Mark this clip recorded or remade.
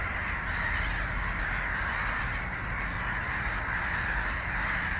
recorded